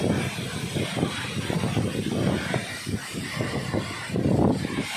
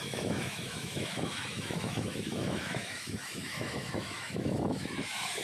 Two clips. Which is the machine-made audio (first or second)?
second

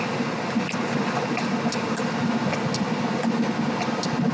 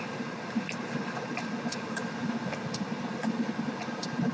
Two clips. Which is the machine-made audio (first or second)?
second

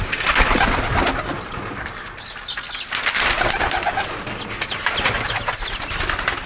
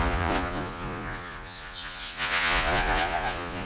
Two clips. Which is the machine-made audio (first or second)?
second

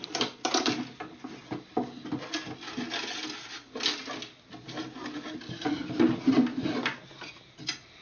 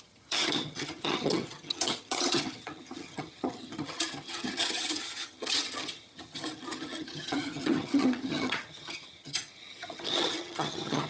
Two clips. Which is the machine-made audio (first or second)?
second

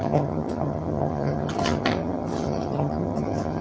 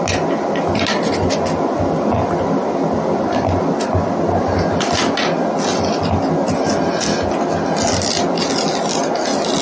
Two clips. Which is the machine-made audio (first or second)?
first